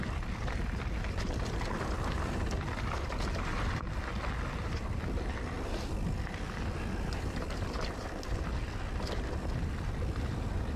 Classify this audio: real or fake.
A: real